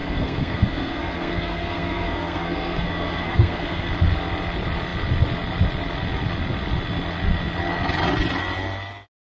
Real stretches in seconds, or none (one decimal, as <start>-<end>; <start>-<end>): 3.9-9.4